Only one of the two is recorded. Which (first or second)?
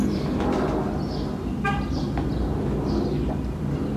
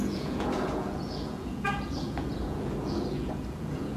first